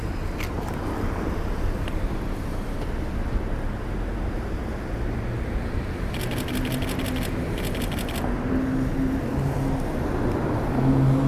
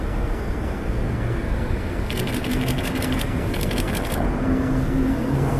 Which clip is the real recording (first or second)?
first